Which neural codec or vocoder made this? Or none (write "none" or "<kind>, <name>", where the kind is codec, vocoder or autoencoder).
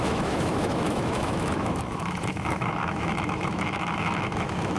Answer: autoencoder, DAC-VAE